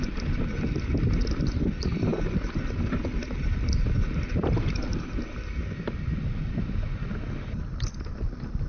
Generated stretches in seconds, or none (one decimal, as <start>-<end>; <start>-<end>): none